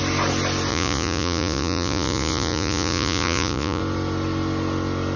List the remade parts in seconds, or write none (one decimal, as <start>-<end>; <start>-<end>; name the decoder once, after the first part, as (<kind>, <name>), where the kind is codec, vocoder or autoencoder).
0.7-3.8 (vocoder, Vocos)